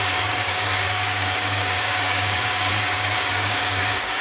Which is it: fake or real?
fake